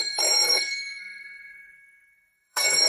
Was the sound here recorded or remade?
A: remade